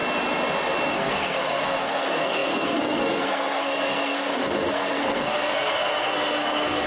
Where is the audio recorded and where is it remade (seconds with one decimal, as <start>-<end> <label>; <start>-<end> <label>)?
0.0-0.9 recorded; 0.9-6.9 remade